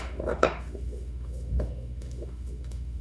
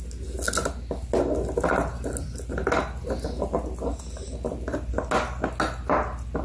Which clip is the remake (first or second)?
first